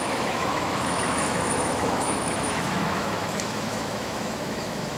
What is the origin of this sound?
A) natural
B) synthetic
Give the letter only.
B